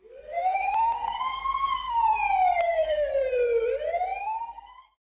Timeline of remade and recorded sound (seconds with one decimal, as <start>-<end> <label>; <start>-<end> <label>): 0.0-2.0 remade; 2.0-2.6 recorded; 2.6-3.1 remade; 3.1-4.2 recorded; 4.2-5.2 remade